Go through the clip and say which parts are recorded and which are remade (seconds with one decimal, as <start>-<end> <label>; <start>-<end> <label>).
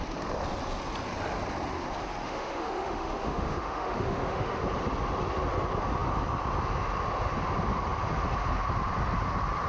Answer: 0.0-2.2 recorded; 2.2-4.6 remade; 4.6-9.7 recorded